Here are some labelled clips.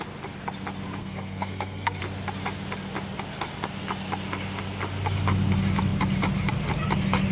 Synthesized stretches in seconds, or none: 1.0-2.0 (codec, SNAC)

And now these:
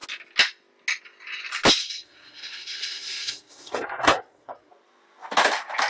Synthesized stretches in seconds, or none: 1.8-4.7 (codec, SNAC)

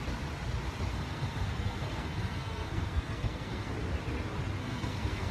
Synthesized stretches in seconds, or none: 0.9-3.7 (codec, SNAC); 4.6-5.3

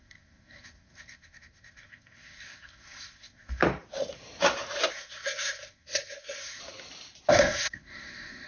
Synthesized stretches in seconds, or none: 0.0-3.6 (codec, SNAC); 4.9-6.6; 7.3-8.5